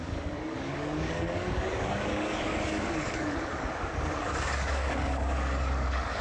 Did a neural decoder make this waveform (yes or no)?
yes